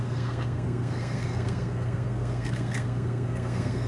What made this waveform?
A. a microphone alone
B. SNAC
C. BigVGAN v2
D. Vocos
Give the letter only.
B